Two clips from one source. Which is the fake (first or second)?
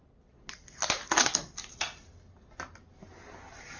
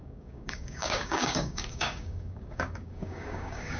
second